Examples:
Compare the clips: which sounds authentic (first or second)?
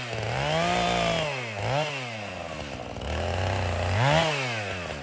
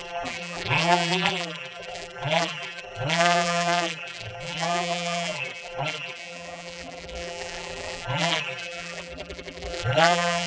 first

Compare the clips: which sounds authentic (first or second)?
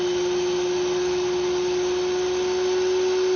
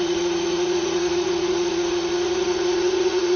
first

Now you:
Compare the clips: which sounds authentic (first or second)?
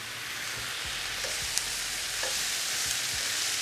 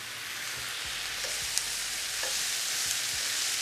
second